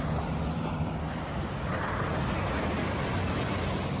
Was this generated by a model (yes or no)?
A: no